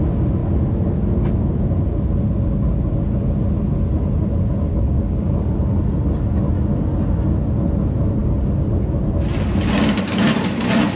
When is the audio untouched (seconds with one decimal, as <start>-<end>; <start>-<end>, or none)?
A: 0.0-4.7; 5.3-11.0